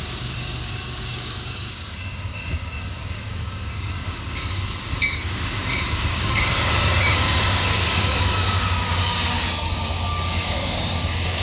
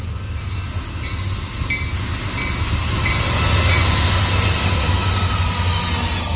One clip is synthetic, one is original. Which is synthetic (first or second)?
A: first